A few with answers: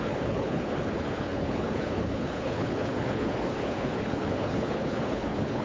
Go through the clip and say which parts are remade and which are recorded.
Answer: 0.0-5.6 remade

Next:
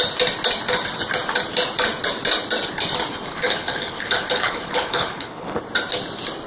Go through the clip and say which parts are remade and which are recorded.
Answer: 0.0-3.3 recorded; 3.3-5.6 remade; 5.6-6.5 recorded